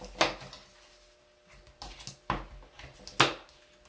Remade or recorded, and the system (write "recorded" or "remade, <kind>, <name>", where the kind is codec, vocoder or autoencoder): recorded